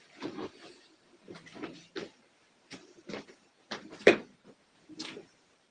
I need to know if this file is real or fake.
fake